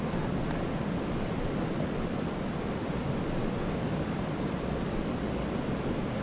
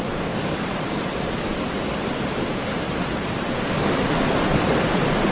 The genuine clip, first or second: first